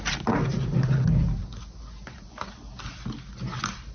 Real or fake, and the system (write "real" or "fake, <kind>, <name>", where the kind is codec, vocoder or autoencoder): real